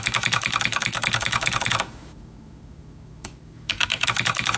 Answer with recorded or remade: remade